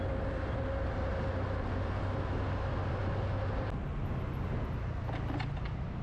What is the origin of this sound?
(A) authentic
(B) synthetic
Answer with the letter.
A